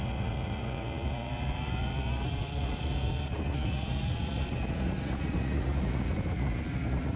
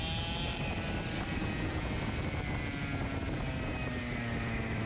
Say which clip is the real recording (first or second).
second